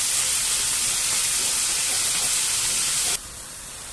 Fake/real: real